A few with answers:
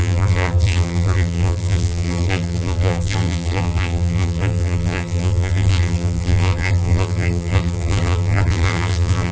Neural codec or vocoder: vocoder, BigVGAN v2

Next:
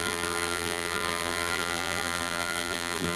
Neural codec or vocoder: vocoder, BigVGAN v2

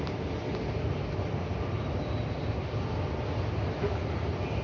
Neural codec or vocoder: none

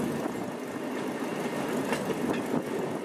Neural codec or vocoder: none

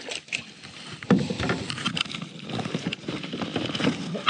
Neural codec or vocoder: none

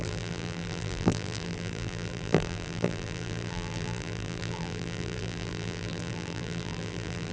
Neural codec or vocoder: vocoder, BigVGAN v2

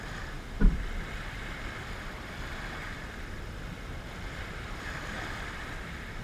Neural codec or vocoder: vocoder, BigVGAN v2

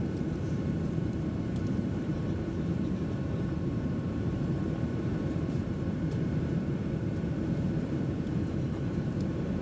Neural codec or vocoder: vocoder, BigVGAN v2